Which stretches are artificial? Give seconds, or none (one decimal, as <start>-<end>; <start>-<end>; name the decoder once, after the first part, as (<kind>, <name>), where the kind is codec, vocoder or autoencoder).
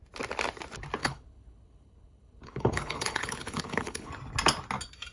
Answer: 1.0-4.1 (codec, HILCodec)